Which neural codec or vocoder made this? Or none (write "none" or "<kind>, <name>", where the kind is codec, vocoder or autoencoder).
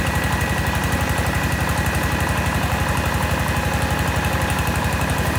vocoder, BigVGAN v2